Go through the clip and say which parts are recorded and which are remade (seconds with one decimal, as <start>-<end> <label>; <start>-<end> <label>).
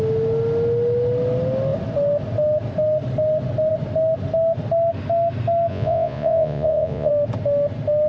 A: 0.0-5.7 recorded; 5.7-7.1 remade; 7.1-8.1 recorded